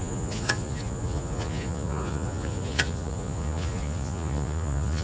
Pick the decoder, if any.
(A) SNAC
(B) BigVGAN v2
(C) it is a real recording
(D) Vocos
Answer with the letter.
D